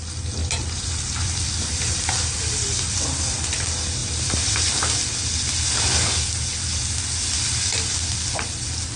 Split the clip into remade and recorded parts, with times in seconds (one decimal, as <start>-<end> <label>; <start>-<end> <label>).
0.0-0.4 recorded; 0.4-3.0 remade; 3.0-4.0 recorded; 4.0-5.1 remade; 5.1-9.0 recorded